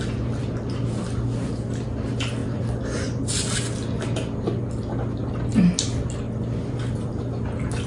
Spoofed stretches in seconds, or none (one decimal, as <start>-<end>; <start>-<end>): none